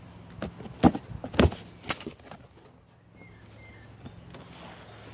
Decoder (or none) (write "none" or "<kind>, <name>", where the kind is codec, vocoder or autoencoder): none